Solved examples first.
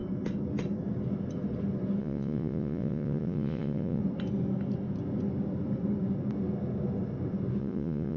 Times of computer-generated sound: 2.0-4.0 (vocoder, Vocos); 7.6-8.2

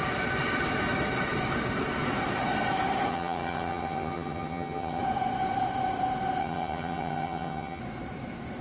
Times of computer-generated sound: 3.1-5.0 (vocoder, HiFi-GAN); 6.4-7.8

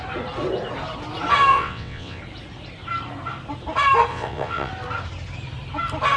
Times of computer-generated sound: 1.5-2.2 (vocoder, WaveNeXt); 4.1-4.7

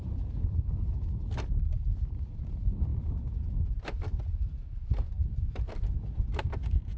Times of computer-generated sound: none